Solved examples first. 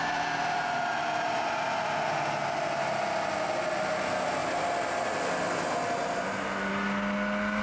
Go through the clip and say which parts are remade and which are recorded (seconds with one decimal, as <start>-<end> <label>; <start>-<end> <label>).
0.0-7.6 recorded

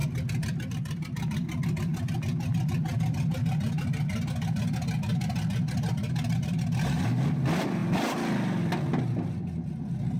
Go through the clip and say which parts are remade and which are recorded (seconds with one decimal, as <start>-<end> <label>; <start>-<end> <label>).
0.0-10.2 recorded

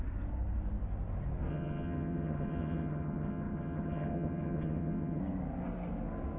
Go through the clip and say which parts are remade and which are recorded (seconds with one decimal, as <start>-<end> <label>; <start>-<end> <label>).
0.0-1.5 recorded; 1.5-5.2 remade; 5.2-6.4 recorded